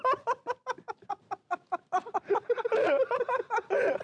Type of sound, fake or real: real